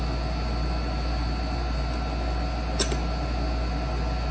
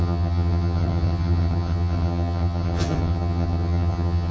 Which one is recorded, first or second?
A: first